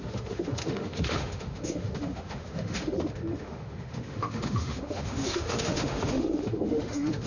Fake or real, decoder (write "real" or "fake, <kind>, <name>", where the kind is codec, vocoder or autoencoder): fake, autoencoder, DAC-VAE